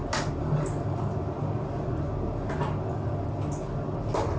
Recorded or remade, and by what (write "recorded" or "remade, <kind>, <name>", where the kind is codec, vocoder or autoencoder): recorded